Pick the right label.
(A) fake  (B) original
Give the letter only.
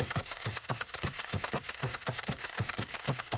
A